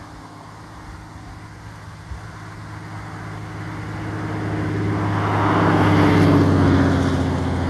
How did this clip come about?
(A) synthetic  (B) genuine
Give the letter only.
B